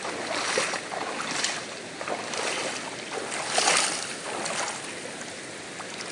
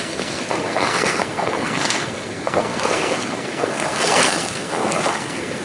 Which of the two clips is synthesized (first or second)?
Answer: second